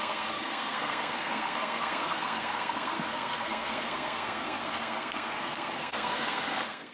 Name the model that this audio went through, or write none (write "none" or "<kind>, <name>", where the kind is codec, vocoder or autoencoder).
codec, SNAC